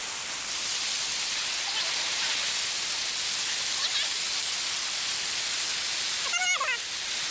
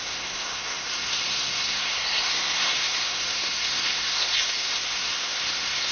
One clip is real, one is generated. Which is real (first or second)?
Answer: first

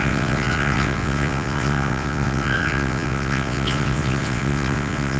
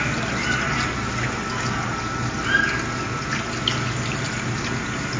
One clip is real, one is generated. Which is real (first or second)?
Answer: second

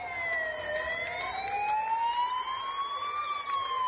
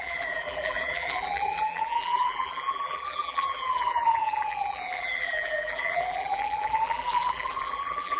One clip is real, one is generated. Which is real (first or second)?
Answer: first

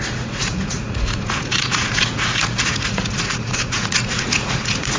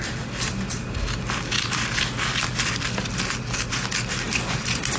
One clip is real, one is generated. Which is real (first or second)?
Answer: second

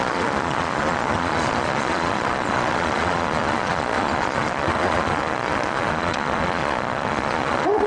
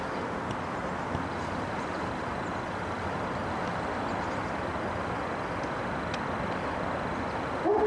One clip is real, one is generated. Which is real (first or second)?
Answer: second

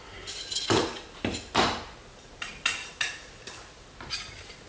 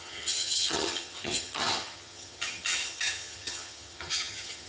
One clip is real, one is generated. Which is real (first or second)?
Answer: first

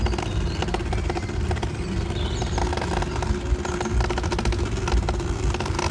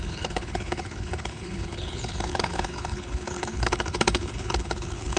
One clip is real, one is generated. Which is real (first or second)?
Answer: first